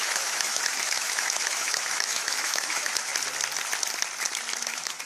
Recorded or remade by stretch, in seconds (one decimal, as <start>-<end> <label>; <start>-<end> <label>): 0.0-3.1 remade; 3.1-4.6 recorded; 4.6-5.1 remade